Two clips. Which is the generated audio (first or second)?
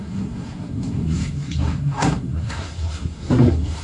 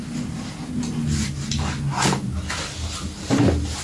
first